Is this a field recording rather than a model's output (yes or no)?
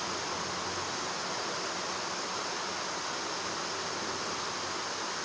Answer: yes